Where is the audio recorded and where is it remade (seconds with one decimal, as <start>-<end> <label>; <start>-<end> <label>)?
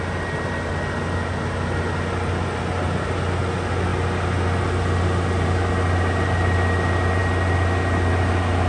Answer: 0.0-8.7 recorded